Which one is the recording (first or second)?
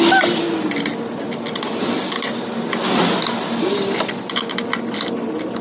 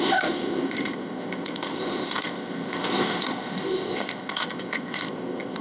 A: first